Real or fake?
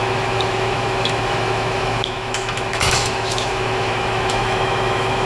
fake